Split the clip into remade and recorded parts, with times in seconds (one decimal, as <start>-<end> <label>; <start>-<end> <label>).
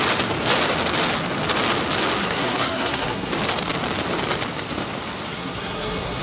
0.0-2.2 recorded; 2.2-3.3 remade; 3.3-5.3 recorded; 5.3-6.2 remade